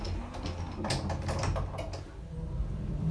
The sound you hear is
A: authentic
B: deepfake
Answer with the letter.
A